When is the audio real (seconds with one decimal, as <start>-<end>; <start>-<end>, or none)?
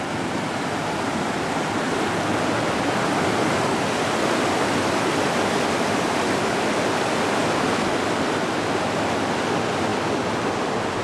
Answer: 0.0-11.0